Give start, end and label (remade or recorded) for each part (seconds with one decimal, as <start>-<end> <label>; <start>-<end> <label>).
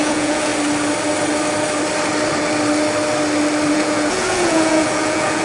0.0-0.5 remade; 0.5-3.7 recorded; 3.7-5.4 remade